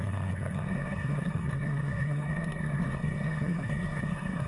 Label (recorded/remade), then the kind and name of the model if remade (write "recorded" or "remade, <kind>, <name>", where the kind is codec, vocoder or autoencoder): remade, codec, SNAC